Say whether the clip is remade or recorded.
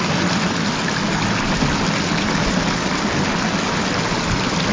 recorded